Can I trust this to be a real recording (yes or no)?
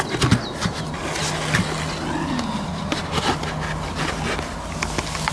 yes